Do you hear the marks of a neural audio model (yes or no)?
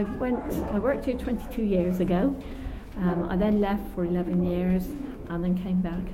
yes